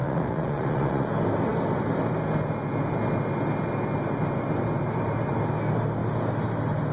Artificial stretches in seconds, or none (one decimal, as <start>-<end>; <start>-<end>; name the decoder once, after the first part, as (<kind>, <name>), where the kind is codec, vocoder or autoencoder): 0.0-1.1 (vocoder, Vocos)